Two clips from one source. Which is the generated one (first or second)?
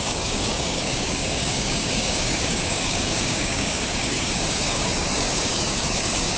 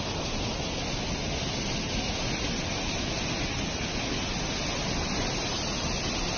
first